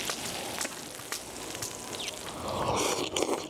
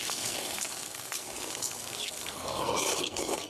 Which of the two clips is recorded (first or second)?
first